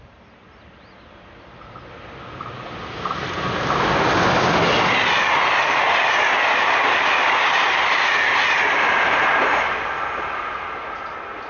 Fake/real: real